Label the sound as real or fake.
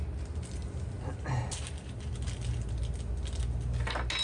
real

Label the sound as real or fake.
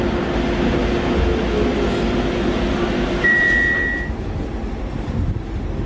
real